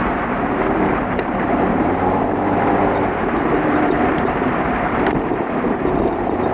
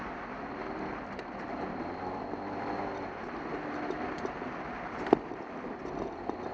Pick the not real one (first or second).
first